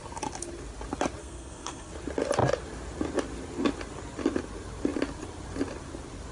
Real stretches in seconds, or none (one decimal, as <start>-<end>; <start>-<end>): 0.0-1.2; 1.9-6.3